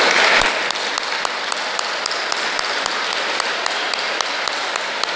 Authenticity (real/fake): real